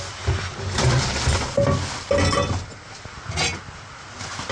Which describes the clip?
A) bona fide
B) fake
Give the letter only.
A